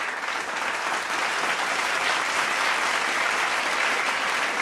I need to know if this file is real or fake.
real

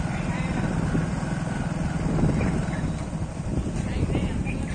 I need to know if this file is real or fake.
real